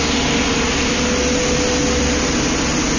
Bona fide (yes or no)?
yes